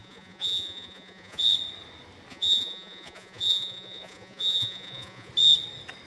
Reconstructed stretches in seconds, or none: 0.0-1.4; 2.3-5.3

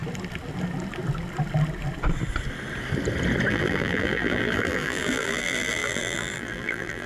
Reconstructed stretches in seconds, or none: 3.5-7.1

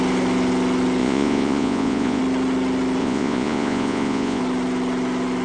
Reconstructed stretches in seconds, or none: 1.0-2.2; 3.0-4.4

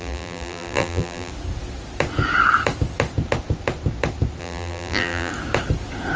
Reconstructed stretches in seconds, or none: 0.0-1.3; 4.4-5.3

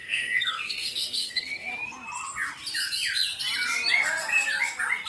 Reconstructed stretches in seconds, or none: 0.0-1.7